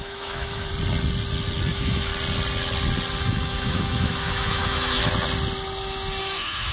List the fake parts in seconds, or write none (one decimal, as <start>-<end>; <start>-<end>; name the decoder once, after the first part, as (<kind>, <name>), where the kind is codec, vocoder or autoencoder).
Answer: 0.0-0.7 (autoencoder, DAC-VAE); 1.7-2.1; 3.2-5.0; 6.2-6.7